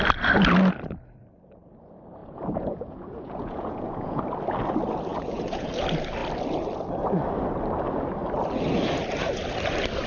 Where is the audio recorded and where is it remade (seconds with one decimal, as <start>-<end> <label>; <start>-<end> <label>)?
0.0-2.2 recorded; 2.2-4.2 remade; 4.2-5.1 recorded; 5.1-5.7 remade; 5.7-10.1 recorded